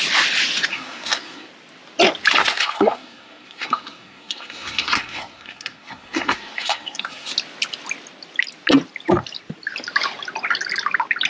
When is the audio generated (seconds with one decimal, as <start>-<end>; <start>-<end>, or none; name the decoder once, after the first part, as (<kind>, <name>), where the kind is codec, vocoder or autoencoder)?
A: 0.7-1.5 (codec, SNAC); 2.4-7.3